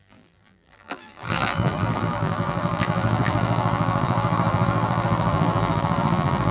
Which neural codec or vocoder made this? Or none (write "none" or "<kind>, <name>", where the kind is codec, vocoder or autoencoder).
vocoder, BigVGAN v2